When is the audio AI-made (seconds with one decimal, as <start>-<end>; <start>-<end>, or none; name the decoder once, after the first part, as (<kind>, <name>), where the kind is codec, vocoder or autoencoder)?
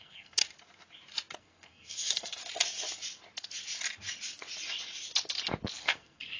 0.0-0.4 (codec, SNAC); 1.4-2.4; 5.8-6.4